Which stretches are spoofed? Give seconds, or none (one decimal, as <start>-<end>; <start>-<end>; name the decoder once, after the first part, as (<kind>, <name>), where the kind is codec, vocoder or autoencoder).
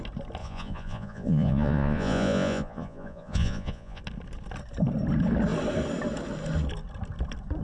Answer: 0.4-4.0 (vocoder, Vocos)